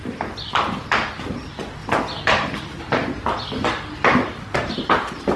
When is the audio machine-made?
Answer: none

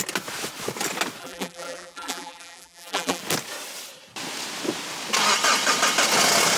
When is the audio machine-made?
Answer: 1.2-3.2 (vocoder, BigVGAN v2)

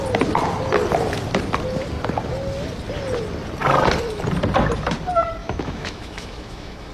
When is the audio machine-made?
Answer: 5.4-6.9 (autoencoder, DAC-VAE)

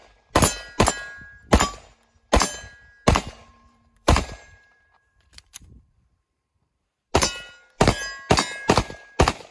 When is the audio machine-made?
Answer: 3.4-7.0 (vocoder, BigVGAN v2)

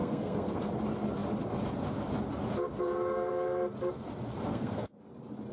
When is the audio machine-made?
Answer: 0.0-0.7 (codec, SNAC); 4.5-5.0

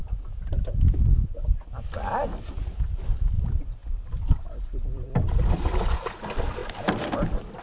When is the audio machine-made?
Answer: 3.8-5.5 (vocoder, BigVGAN v2)

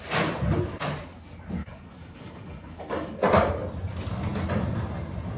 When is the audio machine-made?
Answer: 1.6-3.2 (codec, DAC)